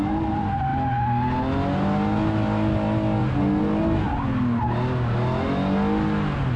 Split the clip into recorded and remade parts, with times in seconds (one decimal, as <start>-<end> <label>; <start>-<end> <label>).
0.0-6.6 recorded